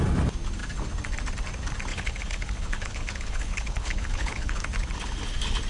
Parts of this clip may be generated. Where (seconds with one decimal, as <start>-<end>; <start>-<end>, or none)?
1.9-4.6